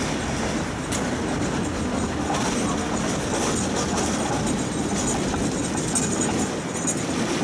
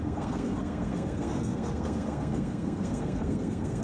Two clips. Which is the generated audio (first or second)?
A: second